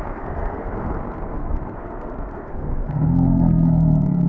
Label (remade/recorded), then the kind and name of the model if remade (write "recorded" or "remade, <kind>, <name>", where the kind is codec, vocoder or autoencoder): remade, codec, SNAC